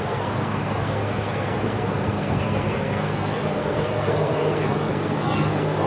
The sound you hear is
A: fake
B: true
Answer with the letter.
A